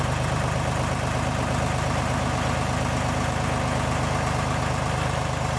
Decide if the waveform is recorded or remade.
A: recorded